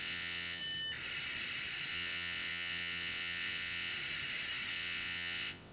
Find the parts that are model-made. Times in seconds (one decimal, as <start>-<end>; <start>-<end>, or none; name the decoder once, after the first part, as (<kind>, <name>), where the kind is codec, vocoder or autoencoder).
0.0-0.6 (vocoder, WaveNeXt); 1.9-3.9; 4.7-5.7

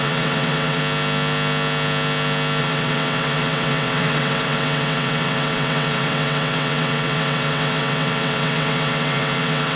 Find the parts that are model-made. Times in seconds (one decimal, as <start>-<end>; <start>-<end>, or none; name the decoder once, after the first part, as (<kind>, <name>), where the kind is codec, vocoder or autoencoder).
0.0-0.8 (vocoder, WaveNeXt); 2.6-9.8